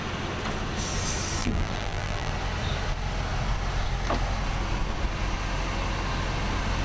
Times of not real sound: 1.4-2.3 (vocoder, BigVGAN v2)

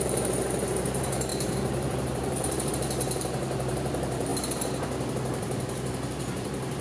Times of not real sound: 0.0-4.3 (vocoder, BigVGAN v2); 5.1-6.8

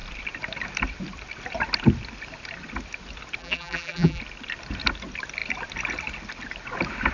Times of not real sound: 3.4-4.2 (vocoder, BigVGAN v2)

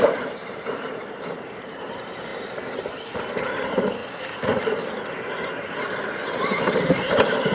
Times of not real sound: 0.0-4.0 (vocoder, BigVGAN v2); 6.4-7.5

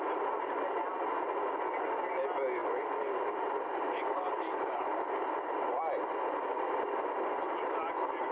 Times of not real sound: 2.6-5.8 (vocoder, BigVGAN v2)

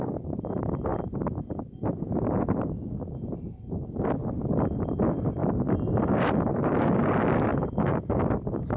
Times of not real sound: 0.9-1.6 (vocoder, BigVGAN v2); 4.2-5.0; 5.4-6.0; 7.5-8.2

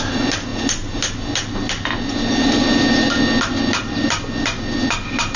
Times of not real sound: none

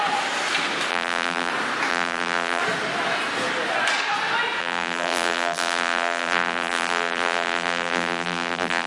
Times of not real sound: 0.9-1.5 (vocoder, BigVGAN v2); 1.9-2.6; 4.6-8.9